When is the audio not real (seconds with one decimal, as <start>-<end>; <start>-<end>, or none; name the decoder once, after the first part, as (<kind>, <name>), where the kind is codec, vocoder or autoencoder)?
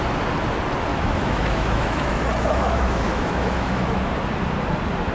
0.9-4.0 (autoencoder, DAC-VAE)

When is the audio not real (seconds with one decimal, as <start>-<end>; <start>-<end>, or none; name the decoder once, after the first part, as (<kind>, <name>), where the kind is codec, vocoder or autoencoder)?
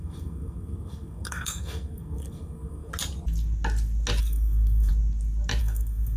0.0-2.9 (codec, SNAC); 4.2-4.9; 5.6-6.2